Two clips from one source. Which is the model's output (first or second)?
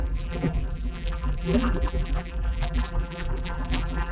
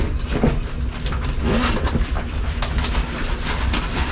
first